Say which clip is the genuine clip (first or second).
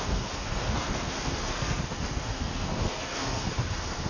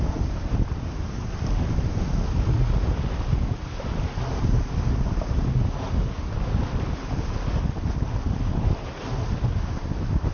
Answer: second